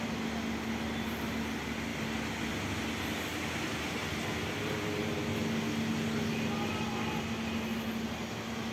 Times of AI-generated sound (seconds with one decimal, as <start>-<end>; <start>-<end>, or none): none